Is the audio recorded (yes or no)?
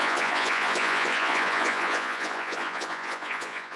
no